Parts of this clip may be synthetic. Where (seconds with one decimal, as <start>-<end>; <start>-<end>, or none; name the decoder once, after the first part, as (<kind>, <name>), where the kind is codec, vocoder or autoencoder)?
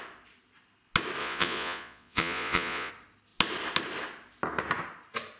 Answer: 1.2-2.9 (vocoder, Vocos)